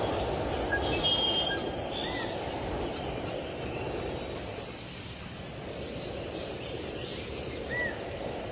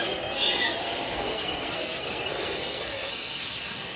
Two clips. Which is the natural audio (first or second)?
first